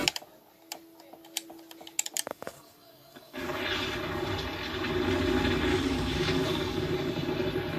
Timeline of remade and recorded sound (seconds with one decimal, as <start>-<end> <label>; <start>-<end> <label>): 0.0-2.3 recorded; 2.3-3.6 remade; 3.6-5.7 recorded; 5.7-6.9 remade; 6.9-7.8 recorded